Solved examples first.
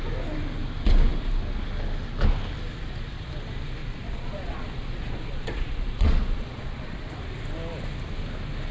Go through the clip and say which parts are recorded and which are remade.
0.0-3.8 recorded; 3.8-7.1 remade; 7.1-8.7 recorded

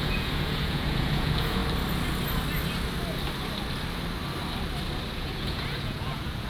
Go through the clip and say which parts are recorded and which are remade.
0.0-1.6 remade; 1.6-5.1 recorded; 5.1-6.5 remade

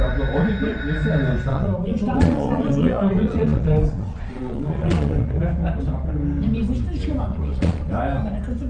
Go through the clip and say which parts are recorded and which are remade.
0.0-1.5 recorded; 1.5-5.4 remade; 5.4-7.3 recorded; 7.3-7.9 remade; 7.9-8.7 recorded

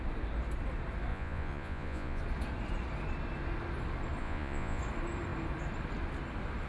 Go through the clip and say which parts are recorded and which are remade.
0.0-1.1 recorded; 1.1-2.2 remade; 2.2-4.2 recorded; 4.2-4.8 remade; 4.8-6.7 recorded

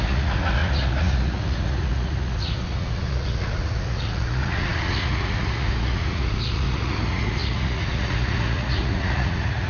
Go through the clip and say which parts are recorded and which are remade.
0.0-9.7 remade

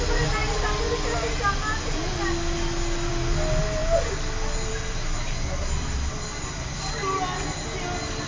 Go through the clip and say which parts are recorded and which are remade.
0.0-8.3 recorded

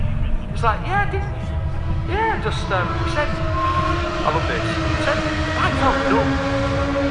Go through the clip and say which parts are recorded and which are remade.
0.0-7.1 recorded

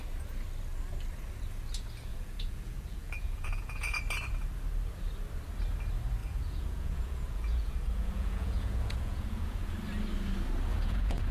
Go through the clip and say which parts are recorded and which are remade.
0.0-2.1 recorded; 2.1-4.0 remade; 4.0-6.2 recorded; 6.2-9.7 remade; 9.7-10.7 recorded; 10.7-11.3 remade